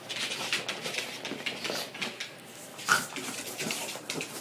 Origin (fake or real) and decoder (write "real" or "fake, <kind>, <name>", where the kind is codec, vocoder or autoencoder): real